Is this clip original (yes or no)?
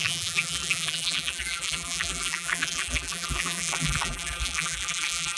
no